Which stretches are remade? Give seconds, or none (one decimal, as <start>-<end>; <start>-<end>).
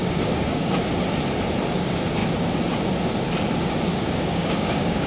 0.0-0.8; 3.9-5.1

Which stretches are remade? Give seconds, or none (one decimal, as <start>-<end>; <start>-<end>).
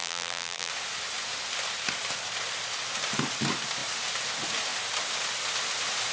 0.0-0.7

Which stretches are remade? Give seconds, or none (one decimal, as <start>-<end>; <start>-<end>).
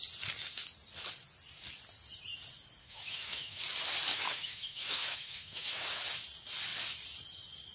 2.8-3.6; 4.1-6.0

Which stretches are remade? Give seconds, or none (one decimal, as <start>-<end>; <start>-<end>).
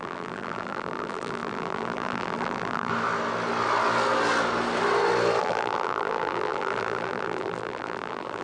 0.0-2.9; 5.4-8.4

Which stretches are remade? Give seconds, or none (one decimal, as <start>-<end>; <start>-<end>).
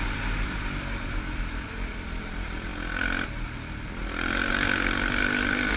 0.0-2.7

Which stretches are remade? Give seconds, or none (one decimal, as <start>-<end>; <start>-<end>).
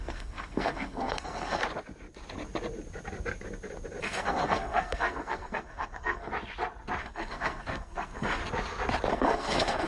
0.0-1.6; 4.0-6.3; 7.0-8.4; 9.1-9.9